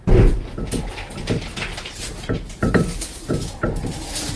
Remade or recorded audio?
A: recorded